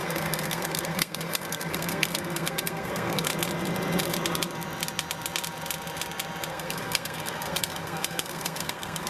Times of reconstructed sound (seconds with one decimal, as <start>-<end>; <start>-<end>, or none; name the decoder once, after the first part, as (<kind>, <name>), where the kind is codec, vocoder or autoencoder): 0.0-3.3 (codec, SNAC); 6.5-9.1